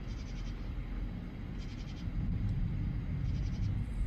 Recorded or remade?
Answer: recorded